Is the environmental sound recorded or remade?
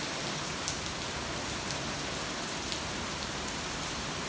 recorded